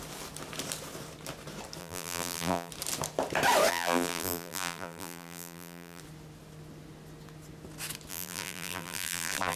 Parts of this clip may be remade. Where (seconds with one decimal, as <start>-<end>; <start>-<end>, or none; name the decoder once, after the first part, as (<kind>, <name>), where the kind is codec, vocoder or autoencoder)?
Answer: 1.8-2.7 (vocoder, BigVGAN v2); 3.7-6.0; 8.1-9.6